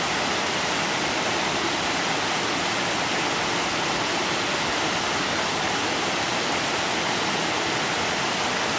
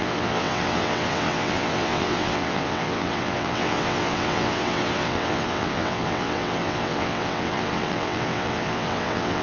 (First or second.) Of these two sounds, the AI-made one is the second